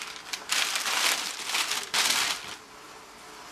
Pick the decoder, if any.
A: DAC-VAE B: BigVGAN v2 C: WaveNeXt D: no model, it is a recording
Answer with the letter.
D